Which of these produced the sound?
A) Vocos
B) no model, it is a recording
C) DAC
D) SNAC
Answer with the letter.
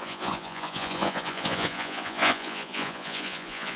A